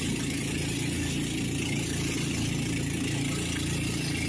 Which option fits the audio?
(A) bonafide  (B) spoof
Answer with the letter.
A